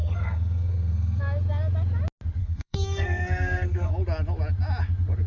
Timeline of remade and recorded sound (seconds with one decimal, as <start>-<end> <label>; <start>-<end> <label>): 0.0-1.2 remade; 1.2-2.4 recorded; 2.4-3.9 remade; 3.9-5.3 recorded